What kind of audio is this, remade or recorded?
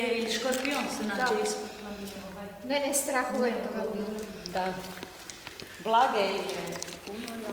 recorded